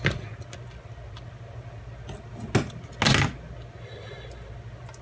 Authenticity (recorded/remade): recorded